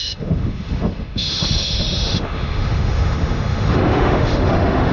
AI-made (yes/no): yes